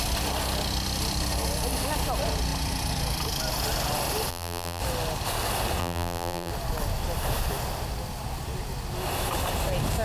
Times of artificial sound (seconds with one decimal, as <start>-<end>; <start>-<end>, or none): 4.3-4.8; 5.8-6.5